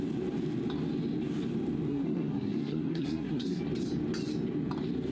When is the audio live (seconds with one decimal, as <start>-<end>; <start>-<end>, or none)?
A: 0.0-1.9; 3.6-5.1